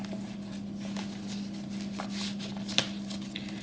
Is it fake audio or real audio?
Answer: real